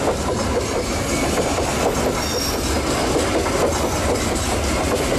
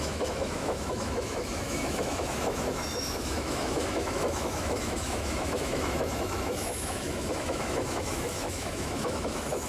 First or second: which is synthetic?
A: second